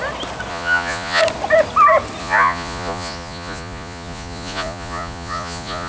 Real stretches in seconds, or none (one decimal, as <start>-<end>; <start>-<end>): 0.0-0.5; 1.2-2.2